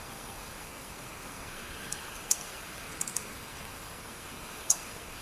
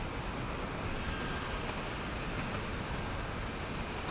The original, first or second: second